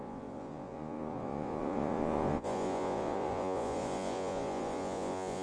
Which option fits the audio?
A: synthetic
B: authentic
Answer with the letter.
A